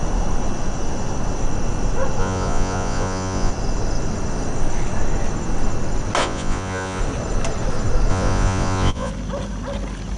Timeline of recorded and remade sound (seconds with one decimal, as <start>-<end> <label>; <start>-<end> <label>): 0.0-2.2 recorded; 2.2-3.5 remade; 3.5-6.2 recorded; 6.2-7.0 remade; 7.0-8.1 recorded; 8.1-9.1 remade; 9.1-10.2 recorded